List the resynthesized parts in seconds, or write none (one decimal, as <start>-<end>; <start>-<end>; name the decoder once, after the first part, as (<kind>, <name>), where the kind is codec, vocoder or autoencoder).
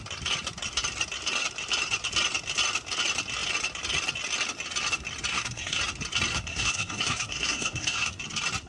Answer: 5.3-5.8 (codec, SNAC); 6.3-8.2